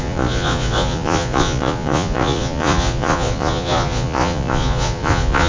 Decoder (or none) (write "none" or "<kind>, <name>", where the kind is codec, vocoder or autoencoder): vocoder, Vocos